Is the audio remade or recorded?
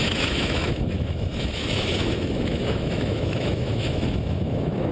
remade